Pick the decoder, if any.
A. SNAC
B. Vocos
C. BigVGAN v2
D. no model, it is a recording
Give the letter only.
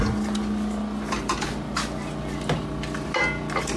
D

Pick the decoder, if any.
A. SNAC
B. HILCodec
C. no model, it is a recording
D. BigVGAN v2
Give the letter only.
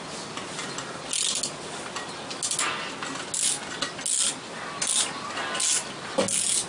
C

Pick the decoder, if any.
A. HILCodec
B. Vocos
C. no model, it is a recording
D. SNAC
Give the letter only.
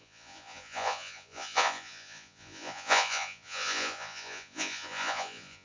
B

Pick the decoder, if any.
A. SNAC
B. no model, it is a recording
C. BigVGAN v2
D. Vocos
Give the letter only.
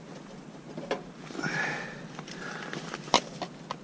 B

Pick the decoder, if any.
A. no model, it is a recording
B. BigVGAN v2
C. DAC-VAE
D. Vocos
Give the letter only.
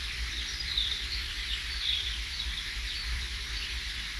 B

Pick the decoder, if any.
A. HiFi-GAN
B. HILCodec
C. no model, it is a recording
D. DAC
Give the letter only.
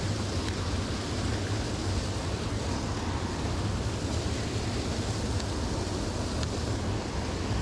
C